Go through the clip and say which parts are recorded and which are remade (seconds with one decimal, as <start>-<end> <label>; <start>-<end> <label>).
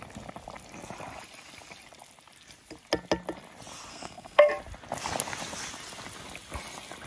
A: 0.0-3.9 recorded; 3.9-4.5 remade; 4.5-7.1 recorded